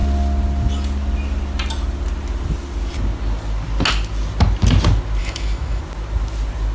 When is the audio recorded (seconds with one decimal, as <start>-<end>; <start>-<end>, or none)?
0.0-5.2; 5.8-6.7

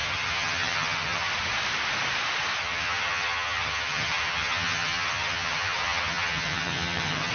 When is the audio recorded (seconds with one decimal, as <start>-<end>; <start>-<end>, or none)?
1.3-2.6

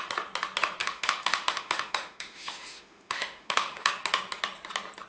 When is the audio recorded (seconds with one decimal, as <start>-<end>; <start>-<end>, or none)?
0.0-0.8; 3.9-5.1